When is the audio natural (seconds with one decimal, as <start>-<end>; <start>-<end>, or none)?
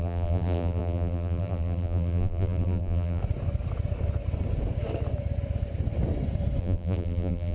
3.2-6.6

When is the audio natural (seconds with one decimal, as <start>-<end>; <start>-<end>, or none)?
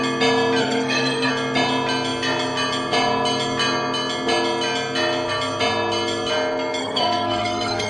0.0-0.6; 1.3-6.8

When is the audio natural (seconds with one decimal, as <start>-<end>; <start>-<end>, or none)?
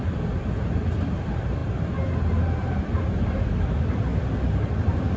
1.6-2.8; 4.1-4.7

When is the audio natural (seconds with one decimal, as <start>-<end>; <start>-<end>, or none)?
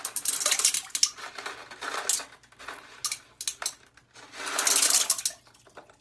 0.0-6.0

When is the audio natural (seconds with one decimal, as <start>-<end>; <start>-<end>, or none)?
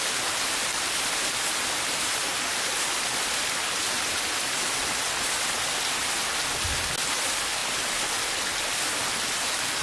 0.0-9.8